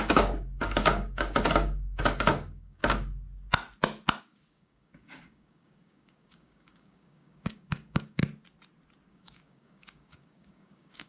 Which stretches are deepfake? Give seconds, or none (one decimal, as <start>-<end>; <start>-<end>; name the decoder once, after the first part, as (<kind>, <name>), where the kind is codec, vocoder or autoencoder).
0.0-2.8 (codec, DAC); 4.2-8.2; 9.1-11.1